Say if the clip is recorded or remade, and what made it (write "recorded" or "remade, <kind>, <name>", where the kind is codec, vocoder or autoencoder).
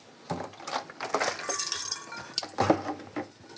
recorded